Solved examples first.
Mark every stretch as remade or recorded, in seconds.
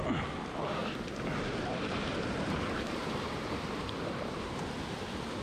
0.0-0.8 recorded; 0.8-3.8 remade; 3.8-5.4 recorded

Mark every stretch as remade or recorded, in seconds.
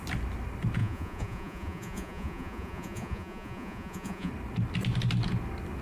0.0-0.8 recorded; 0.8-4.3 remade; 4.3-5.8 recorded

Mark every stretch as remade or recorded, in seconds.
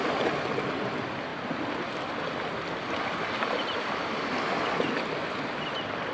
0.0-6.1 recorded